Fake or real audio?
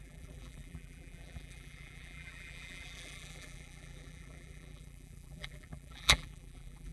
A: fake